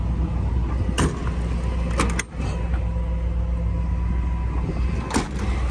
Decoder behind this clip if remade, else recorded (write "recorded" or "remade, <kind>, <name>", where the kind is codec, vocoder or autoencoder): recorded